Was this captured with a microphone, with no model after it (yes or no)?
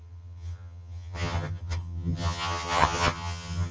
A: no